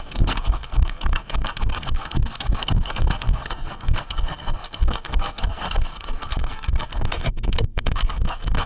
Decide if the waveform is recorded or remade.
remade